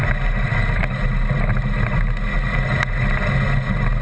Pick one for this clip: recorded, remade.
recorded